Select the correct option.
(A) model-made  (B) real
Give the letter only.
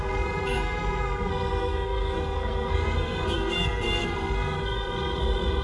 A